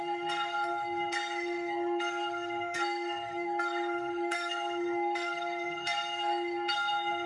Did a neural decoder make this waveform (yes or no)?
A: yes